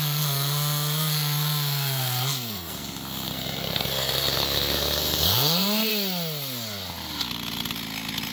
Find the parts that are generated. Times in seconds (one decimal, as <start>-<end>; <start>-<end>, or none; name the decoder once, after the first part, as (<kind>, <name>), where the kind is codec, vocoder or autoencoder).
0.0-5.9 (codec, SNAC)